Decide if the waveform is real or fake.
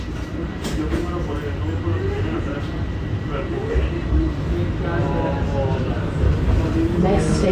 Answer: real